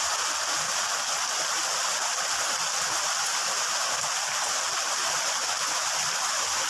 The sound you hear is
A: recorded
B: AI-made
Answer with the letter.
A